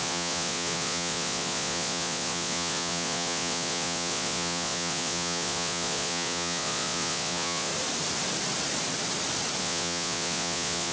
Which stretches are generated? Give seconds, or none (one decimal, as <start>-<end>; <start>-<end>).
0.0-7.7; 9.6-10.9